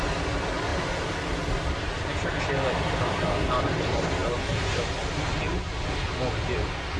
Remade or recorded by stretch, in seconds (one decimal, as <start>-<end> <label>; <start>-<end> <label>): 0.0-0.7 recorded; 0.7-2.4 remade; 2.4-7.0 recorded